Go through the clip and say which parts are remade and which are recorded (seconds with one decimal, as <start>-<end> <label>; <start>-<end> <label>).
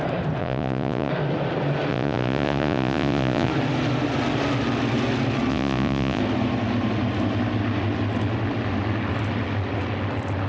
0.0-0.4 recorded; 0.4-1.1 remade; 1.1-1.9 recorded; 1.9-3.5 remade; 3.5-5.5 recorded; 5.5-6.2 remade; 6.2-10.5 recorded